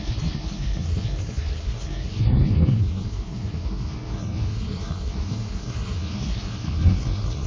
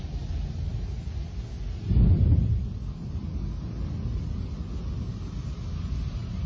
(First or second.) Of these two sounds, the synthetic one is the first